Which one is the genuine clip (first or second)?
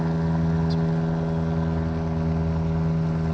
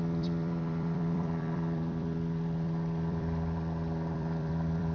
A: first